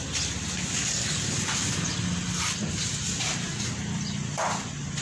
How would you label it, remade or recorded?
recorded